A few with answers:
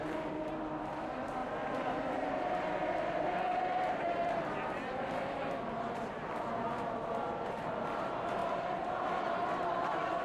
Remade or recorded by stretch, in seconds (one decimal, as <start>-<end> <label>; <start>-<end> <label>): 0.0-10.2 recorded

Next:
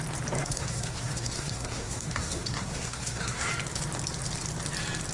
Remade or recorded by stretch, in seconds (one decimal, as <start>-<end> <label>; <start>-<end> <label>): 0.0-0.4 recorded; 0.4-3.5 remade; 3.5-5.1 recorded

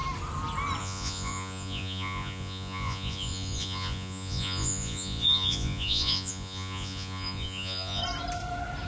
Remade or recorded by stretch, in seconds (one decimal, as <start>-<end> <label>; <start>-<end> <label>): 0.0-0.8 recorded; 0.8-8.0 remade; 8.0-8.9 recorded

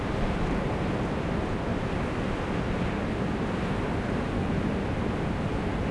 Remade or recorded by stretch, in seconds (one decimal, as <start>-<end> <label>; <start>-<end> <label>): 0.0-5.9 recorded

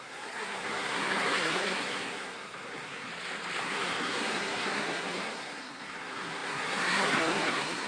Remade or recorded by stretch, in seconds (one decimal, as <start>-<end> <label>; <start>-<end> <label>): 0.0-3.1 remade; 3.1-3.6 recorded; 3.6-7.9 remade

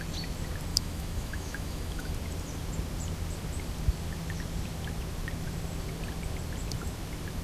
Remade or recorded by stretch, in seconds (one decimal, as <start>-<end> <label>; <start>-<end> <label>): 0.0-0.7 recorded; 0.7-2.1 remade; 2.1-7.4 recorded

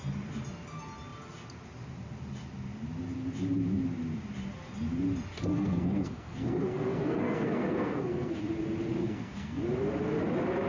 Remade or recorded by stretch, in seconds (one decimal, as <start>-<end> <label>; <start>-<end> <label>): 0.0-5.5 recorded; 5.5-8.4 remade; 8.4-9.0 recorded; 9.0-9.6 remade; 9.6-10.7 recorded

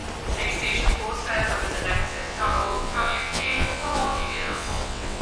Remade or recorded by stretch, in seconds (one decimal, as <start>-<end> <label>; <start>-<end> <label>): 0.0-2.0 recorded; 2.0-5.2 remade